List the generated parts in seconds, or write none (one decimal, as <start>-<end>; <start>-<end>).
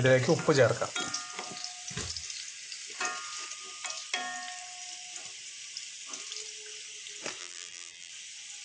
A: 7.4-8.1